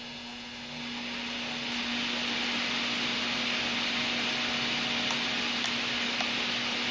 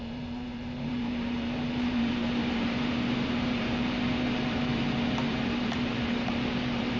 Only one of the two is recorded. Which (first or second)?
first